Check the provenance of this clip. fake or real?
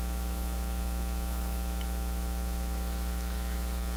fake